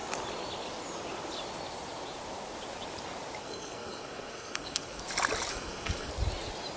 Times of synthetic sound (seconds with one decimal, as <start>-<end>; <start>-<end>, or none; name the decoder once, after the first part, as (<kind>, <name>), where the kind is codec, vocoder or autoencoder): 3.4-5.0 (codec, SNAC); 5.5-6.1